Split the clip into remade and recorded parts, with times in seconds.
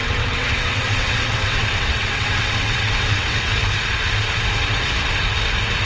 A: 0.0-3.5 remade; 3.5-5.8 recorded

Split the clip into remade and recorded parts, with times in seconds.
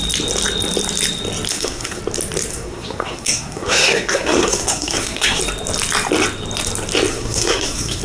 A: 0.0-1.5 recorded; 1.5-2.0 remade; 2.0-2.5 recorded; 2.5-5.4 remade; 5.4-7.1 recorded; 7.1-8.0 remade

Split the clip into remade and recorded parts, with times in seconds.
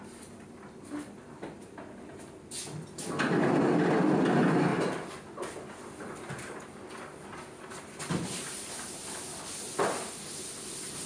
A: 0.0-11.1 recorded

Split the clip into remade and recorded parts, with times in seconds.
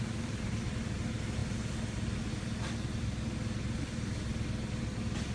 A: 0.0-5.3 recorded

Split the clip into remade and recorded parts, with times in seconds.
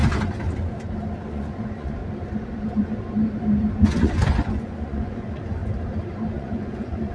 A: 0.0-1.3 recorded; 1.3-2.0 remade; 2.0-3.7 recorded; 3.7-5.6 remade; 5.6-6.3 recorded; 6.3-7.1 remade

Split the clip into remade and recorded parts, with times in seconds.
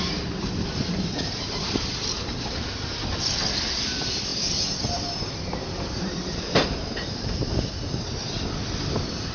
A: 0.0-4.3 remade; 4.3-4.9 recorded; 4.9-9.3 remade